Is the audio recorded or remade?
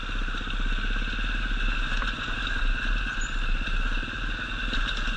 recorded